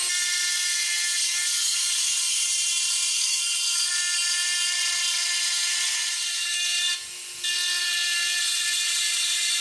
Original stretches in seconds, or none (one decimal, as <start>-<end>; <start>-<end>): 0.0-1.2; 2.5-3.1; 3.9-9.6